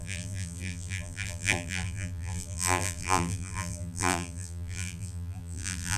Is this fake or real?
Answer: fake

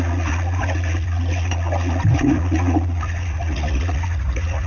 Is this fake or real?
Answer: fake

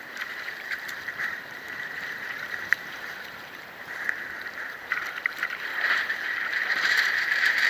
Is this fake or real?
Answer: fake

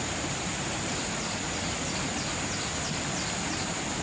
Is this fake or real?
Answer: real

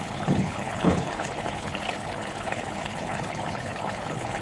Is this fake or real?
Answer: fake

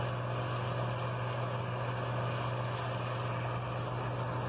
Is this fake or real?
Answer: real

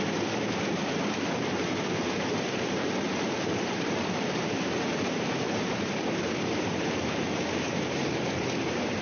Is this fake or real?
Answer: fake